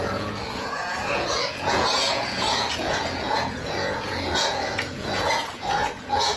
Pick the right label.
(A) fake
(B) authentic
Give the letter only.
A